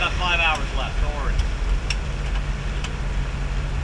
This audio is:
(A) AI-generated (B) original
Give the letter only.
B